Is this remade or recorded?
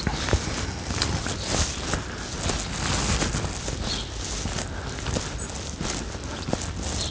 recorded